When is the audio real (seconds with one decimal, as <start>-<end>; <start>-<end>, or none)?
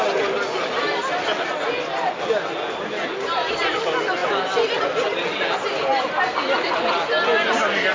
0.0-7.9